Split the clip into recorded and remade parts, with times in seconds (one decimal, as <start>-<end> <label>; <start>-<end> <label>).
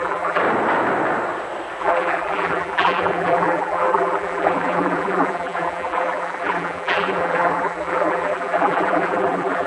0.0-0.4 remade; 0.4-1.8 recorded; 1.8-9.7 remade